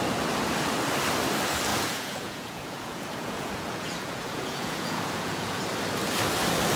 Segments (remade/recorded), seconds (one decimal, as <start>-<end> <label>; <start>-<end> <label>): 0.0-1.7 recorded; 1.7-5.6 remade; 5.6-6.8 recorded